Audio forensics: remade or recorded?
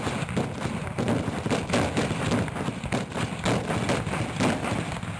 recorded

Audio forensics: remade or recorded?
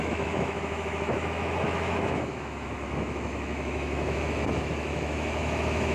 remade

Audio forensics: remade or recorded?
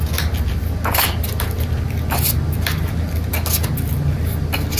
recorded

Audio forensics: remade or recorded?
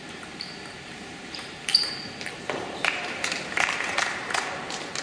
remade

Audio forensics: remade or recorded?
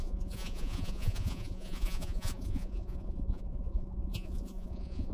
remade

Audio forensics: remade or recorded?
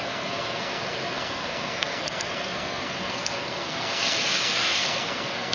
remade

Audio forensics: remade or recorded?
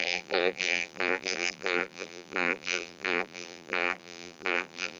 remade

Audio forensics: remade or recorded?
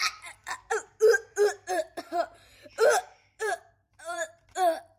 remade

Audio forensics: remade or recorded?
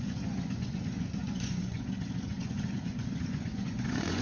remade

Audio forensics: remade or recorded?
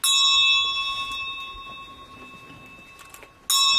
recorded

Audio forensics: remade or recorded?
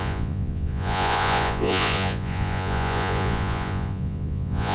remade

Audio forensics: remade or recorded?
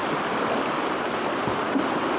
remade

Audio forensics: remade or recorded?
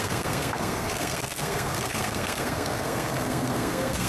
remade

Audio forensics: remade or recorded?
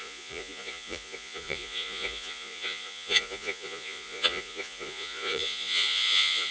remade